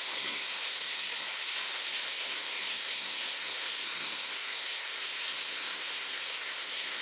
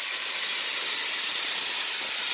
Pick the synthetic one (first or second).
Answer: first